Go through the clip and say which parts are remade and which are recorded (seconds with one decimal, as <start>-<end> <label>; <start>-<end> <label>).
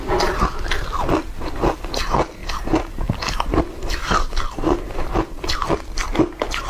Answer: 0.0-2.4 recorded; 2.4-3.6 remade; 3.6-6.7 recorded